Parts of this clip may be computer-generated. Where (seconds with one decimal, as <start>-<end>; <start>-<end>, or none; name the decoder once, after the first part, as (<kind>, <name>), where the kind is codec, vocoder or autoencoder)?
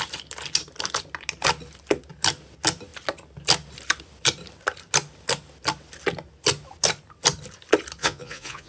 8.0-8.7 (vocoder, Vocos)